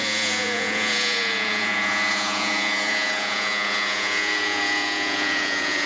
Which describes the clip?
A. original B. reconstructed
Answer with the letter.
B